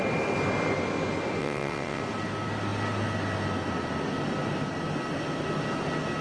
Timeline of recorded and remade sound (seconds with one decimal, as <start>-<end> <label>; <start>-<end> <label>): 0.0-1.4 recorded; 1.4-2.0 remade; 2.0-6.2 recorded